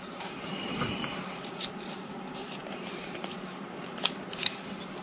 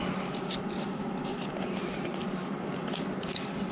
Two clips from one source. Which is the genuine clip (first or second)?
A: second